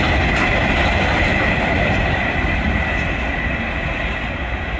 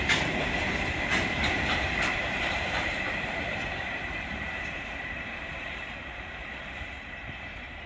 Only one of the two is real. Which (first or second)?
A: first